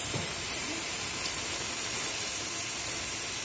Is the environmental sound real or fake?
real